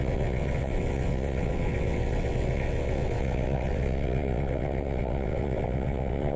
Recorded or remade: remade